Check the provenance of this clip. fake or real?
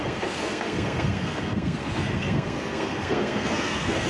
fake